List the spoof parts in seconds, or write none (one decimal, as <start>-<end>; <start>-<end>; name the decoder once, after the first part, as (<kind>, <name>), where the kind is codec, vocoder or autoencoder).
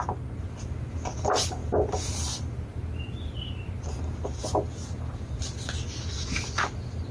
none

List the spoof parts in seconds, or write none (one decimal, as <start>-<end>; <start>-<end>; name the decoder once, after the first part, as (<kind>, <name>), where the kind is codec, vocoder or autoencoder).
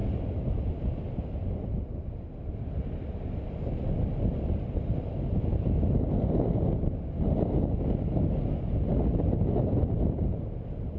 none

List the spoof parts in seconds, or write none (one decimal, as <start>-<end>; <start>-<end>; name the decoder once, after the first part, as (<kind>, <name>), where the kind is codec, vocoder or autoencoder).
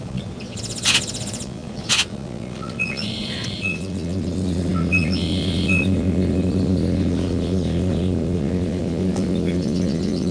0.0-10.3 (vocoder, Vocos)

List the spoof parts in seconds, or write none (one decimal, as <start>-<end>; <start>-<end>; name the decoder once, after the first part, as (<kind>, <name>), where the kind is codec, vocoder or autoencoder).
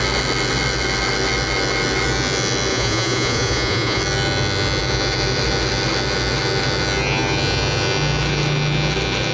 2.7-4.0 (vocoder, Vocos)